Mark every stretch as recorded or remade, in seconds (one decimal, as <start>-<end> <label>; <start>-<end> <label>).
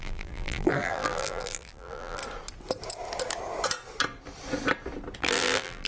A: 0.0-2.2 remade; 2.2-5.2 recorded; 5.2-5.9 remade